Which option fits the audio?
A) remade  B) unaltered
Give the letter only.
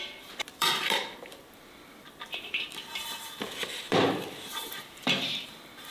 A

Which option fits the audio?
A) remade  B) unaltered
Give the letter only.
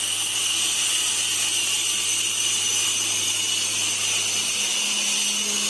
B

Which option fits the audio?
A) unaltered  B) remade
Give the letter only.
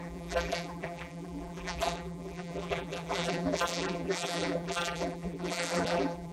B